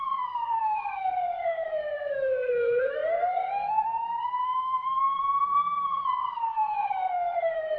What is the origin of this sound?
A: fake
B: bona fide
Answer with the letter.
A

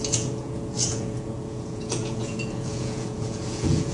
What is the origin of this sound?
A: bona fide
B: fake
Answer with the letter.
B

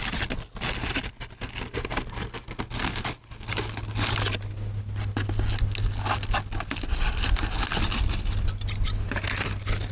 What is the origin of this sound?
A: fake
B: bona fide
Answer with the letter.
B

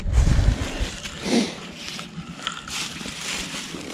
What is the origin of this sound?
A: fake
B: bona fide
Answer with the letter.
B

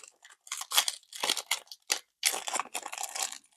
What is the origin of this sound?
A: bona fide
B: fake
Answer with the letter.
A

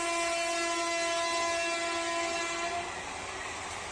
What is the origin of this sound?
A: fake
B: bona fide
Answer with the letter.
B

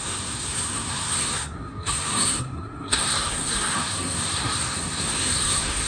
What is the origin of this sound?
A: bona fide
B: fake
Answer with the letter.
B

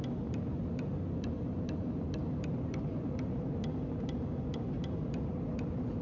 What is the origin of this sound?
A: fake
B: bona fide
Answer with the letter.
B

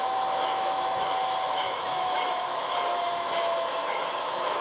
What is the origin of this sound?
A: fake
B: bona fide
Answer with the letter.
A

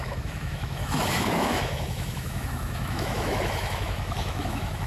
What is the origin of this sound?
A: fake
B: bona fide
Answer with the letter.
A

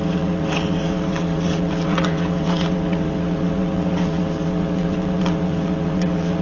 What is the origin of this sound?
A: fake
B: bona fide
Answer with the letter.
A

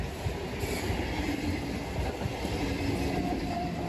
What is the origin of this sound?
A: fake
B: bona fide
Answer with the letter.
B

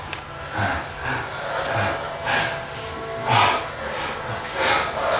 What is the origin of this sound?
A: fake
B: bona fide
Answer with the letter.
B